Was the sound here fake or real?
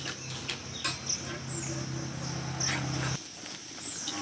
real